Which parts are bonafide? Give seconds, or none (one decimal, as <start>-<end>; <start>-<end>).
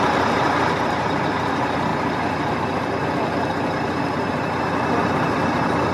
1.9-2.5